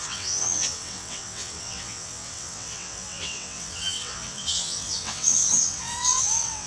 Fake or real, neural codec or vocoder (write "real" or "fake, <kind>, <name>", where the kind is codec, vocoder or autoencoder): fake, vocoder, WaveNeXt